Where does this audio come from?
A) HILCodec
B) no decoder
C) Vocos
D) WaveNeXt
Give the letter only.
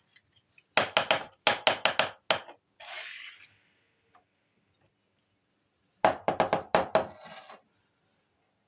B